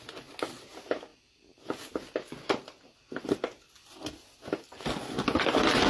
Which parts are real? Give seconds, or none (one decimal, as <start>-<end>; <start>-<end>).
0.0-5.9